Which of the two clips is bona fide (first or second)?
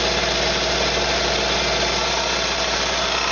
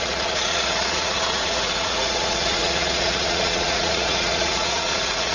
first